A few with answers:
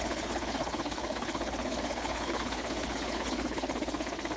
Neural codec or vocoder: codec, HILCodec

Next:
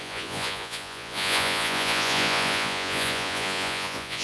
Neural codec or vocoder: vocoder, Vocos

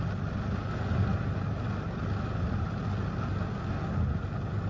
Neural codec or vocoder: none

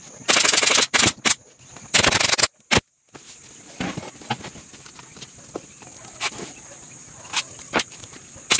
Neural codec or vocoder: none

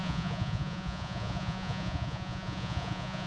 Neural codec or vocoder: vocoder, Vocos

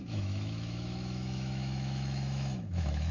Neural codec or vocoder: autoencoder, DAC-VAE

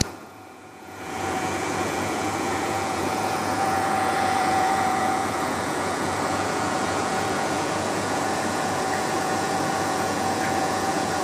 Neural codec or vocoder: vocoder, Vocos